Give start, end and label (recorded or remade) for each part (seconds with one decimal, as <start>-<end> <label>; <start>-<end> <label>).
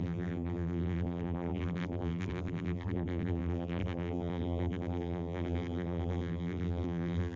0.0-7.4 remade